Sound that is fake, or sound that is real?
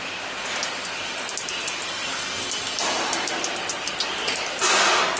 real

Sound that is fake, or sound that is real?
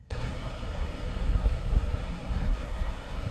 fake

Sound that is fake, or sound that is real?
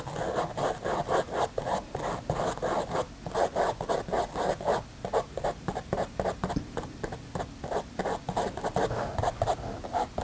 real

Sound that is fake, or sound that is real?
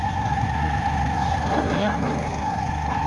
fake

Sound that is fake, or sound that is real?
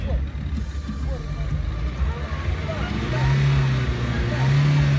real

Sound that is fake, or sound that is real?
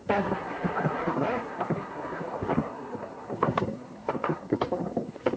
fake